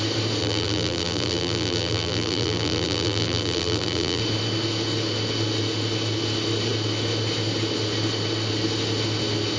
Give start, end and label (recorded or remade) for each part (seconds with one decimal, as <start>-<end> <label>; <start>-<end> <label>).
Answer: 0.0-0.4 recorded; 0.4-4.2 remade; 4.2-9.6 recorded